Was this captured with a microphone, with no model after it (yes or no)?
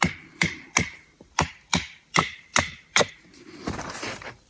no